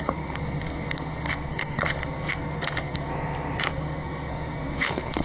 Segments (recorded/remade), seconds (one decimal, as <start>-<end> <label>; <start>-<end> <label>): 0.0-3.1 remade; 3.1-3.7 recorded; 3.7-5.2 remade